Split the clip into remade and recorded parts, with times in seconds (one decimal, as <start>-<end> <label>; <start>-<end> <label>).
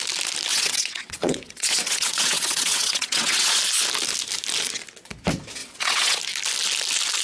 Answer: 0.0-0.5 recorded; 0.5-3.6 remade; 3.6-5.6 recorded; 5.6-6.2 remade; 6.2-7.2 recorded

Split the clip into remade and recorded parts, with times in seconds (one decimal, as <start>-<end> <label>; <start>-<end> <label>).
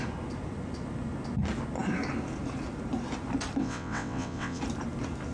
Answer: 0.0-3.6 recorded; 3.6-4.6 remade; 4.6-5.3 recorded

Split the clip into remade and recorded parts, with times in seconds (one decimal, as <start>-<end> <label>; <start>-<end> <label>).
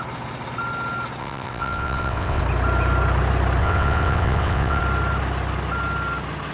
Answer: 0.0-1.2 recorded; 1.2-2.4 remade; 2.4-3.6 recorded; 3.6-4.8 remade; 4.8-6.5 recorded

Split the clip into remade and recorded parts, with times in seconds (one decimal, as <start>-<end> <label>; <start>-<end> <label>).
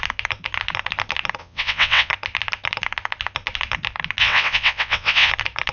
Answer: 0.0-1.4 recorded; 1.4-2.1 remade; 2.1-4.2 recorded; 4.2-5.3 remade; 5.3-5.7 recorded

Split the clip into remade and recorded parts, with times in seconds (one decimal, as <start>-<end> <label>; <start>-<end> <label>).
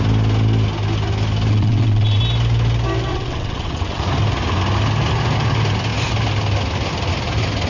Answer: 0.0-1.5 recorded; 1.5-2.2 remade; 2.2-3.1 recorded; 3.1-4.0 remade; 4.0-7.7 recorded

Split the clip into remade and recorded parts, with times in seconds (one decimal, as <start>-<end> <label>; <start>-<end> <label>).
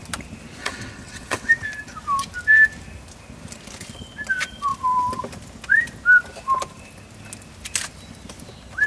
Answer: 0.0-0.6 recorded; 0.6-1.5 remade; 1.5-8.9 recorded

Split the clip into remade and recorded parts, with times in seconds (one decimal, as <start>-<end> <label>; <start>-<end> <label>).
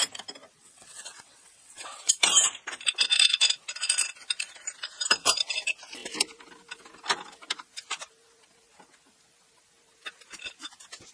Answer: 0.0-0.6 recorded; 0.6-2.2 remade; 2.2-11.1 recorded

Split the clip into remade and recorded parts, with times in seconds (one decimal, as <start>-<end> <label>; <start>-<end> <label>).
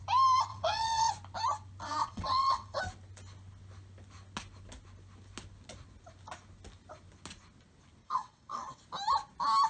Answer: 0.0-0.5 recorded; 0.5-1.1 remade; 1.1-2.0 recorded; 2.0-2.8 remade; 2.8-8.0 recorded; 8.0-8.8 remade; 8.8-9.7 recorded